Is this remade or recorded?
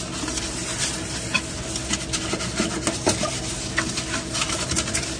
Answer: recorded